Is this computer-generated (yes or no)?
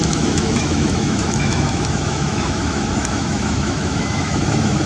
yes